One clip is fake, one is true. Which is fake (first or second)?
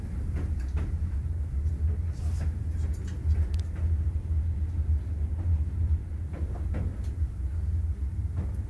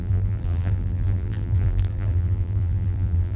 second